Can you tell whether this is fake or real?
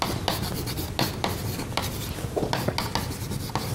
real